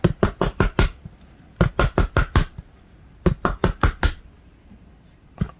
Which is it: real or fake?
real